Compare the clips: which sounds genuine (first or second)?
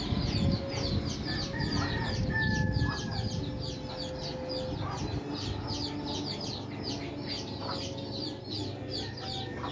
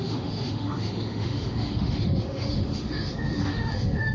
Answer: first